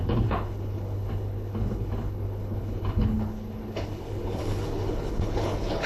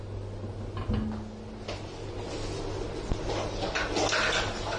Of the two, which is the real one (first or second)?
second